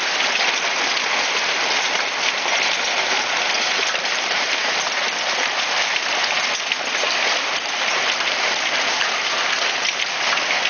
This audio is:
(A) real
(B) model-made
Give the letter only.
A